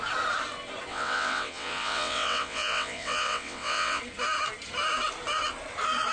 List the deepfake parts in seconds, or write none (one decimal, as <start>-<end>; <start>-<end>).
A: 0.9-4.0